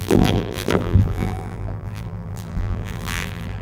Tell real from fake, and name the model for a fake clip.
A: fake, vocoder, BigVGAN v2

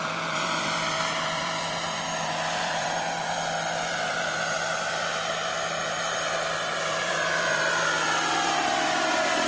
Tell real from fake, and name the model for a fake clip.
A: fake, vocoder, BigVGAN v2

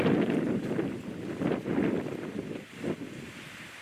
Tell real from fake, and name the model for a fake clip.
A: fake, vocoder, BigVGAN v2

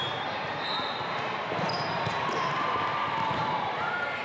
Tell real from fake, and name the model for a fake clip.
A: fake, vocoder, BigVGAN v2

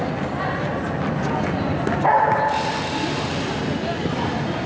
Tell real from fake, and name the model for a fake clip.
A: real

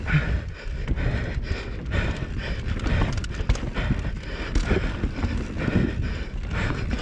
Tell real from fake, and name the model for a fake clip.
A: real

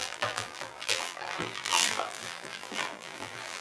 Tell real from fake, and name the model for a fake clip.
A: fake, vocoder, BigVGAN v2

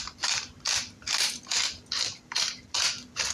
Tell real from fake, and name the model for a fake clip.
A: fake, vocoder, BigVGAN v2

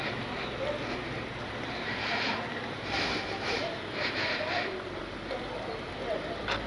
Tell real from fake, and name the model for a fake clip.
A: real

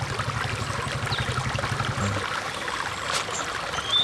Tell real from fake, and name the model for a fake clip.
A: real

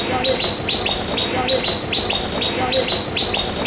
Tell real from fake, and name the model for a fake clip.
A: real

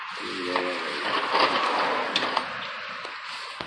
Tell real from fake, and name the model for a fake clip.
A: real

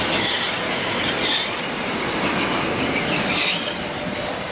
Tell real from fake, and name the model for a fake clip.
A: real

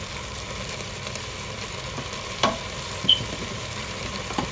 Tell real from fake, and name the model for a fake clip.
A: fake, vocoder, BigVGAN v2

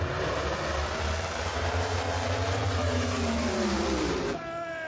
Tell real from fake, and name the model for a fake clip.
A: fake, vocoder, BigVGAN v2